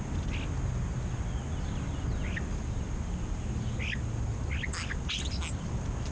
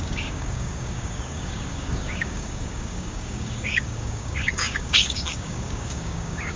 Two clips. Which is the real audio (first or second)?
first